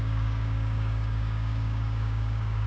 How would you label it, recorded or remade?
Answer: remade